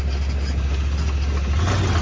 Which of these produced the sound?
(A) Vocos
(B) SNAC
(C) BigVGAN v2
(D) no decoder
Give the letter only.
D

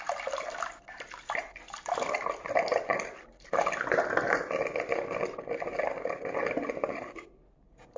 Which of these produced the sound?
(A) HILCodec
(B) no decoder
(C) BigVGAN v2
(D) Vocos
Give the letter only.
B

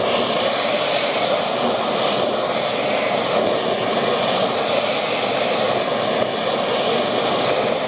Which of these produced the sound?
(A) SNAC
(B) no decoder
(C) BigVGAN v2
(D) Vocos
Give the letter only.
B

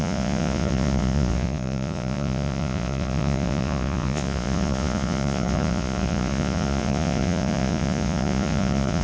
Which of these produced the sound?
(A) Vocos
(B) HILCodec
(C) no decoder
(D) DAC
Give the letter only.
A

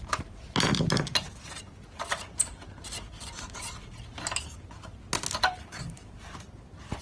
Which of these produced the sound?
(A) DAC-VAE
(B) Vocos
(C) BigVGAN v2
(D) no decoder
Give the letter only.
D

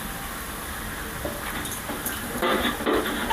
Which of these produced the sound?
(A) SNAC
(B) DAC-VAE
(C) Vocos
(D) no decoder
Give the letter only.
D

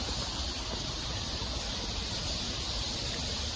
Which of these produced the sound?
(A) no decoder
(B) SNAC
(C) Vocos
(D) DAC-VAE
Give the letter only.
A